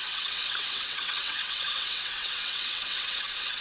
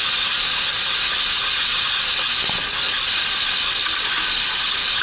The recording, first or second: second